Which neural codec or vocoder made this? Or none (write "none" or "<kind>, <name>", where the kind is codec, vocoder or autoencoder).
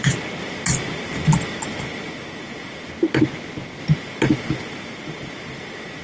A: none